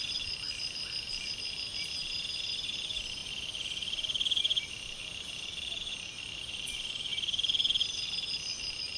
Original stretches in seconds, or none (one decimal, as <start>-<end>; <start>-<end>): none

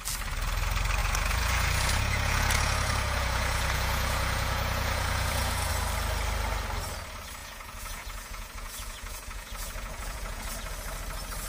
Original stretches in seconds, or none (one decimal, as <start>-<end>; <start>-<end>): 0.0-1.0; 5.7-7.4; 10.5-11.5

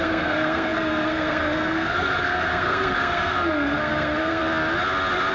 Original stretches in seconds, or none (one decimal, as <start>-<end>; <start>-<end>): 4.4-5.3

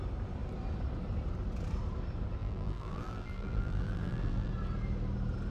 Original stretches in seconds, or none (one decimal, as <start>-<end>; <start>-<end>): 0.0-2.4; 4.5-5.5

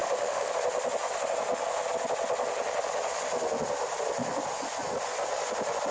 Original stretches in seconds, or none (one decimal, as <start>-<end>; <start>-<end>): 0.5-5.9